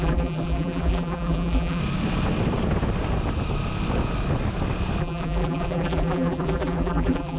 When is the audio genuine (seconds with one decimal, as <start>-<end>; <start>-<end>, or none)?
1.8-5.0